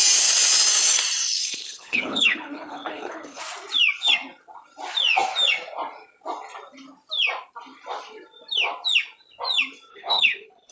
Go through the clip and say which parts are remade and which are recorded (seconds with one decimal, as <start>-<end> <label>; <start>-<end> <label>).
0.0-1.4 recorded; 1.4-3.4 remade; 3.4-9.9 recorded; 9.9-10.7 remade